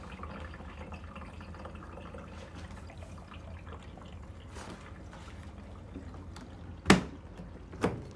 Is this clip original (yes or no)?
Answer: yes